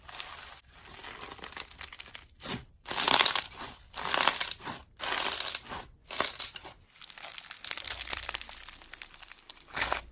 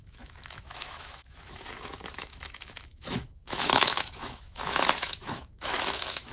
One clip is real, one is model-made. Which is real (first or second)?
first